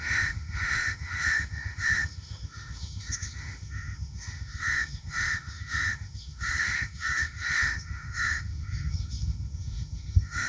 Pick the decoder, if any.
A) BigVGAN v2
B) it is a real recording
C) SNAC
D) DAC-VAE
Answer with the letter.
D